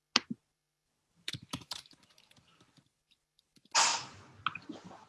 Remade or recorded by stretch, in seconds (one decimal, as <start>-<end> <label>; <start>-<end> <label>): 0.0-0.4 recorded; 0.4-3.5 remade; 3.5-5.1 recorded